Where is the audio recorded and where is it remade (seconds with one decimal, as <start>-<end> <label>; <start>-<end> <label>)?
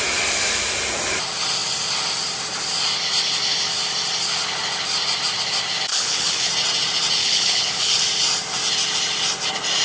0.0-5.9 recorded; 5.9-6.5 remade; 6.5-7.2 recorded; 7.2-8.0 remade; 8.0-9.8 recorded